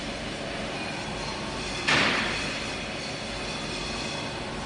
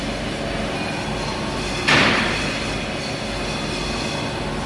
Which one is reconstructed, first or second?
first